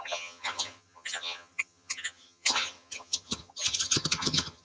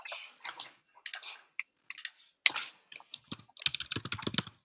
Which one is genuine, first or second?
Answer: second